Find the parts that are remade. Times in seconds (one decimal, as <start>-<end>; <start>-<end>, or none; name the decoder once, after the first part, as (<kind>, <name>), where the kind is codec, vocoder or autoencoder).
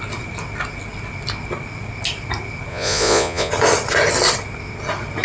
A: 2.7-3.5 (vocoder, Vocos)